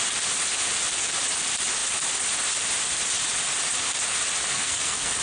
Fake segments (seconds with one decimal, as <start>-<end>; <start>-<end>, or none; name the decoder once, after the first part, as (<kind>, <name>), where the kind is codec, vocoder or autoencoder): 4.5-5.2 (codec, SNAC)